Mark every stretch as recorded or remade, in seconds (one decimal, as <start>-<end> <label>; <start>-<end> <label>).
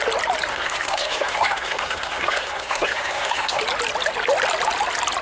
0.0-0.5 recorded; 0.5-3.6 remade; 3.6-5.2 recorded